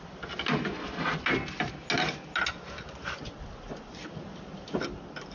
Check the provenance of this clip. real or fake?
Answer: real